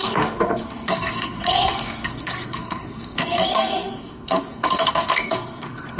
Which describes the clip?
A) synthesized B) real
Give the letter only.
A